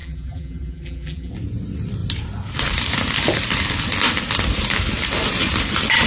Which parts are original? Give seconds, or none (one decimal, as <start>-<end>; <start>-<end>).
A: 1.3-6.1